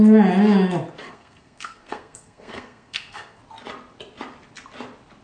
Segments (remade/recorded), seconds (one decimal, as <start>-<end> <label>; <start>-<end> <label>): 0.0-1.0 recorded; 1.0-3.4 remade; 3.4-5.2 recorded

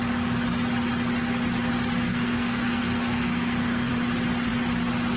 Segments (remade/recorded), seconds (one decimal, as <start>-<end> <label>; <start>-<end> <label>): 0.0-2.1 recorded; 2.1-3.9 remade; 3.9-5.2 recorded

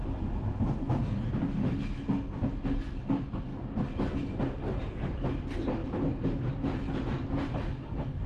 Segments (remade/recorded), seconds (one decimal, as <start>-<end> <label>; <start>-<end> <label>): 0.0-8.3 recorded

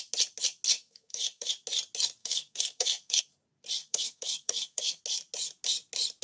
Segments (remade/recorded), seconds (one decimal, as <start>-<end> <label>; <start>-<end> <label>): 0.0-0.7 recorded; 0.7-1.5 remade; 1.5-2.2 recorded; 2.2-3.2 remade; 3.2-3.8 recorded; 3.8-5.0 remade; 5.0-6.2 recorded

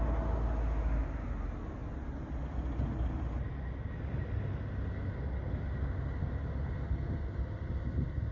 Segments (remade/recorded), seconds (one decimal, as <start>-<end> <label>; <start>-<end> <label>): 0.0-8.3 recorded